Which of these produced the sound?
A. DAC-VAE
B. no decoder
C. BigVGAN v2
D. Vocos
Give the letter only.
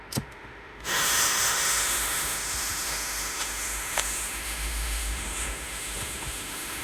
A